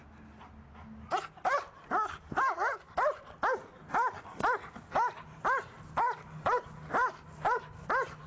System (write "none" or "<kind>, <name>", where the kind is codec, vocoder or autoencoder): none